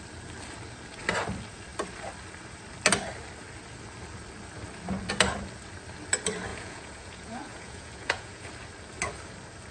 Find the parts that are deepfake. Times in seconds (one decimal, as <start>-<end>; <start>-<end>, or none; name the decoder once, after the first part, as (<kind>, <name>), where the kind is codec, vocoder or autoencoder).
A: 6.5-8.5 (vocoder, Vocos)